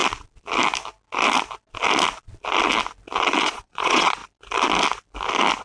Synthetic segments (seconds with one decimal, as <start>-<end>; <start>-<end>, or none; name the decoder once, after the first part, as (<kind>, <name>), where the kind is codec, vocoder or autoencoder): 3.4-4.2 (vocoder, Vocos)